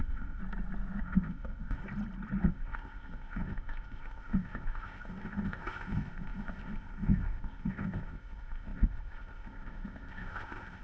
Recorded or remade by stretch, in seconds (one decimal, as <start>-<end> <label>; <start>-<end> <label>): 0.0-0.4 remade; 0.4-1.0 recorded; 1.0-1.8 remade; 1.8-2.4 recorded; 2.4-10.8 remade